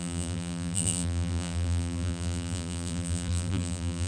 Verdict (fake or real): fake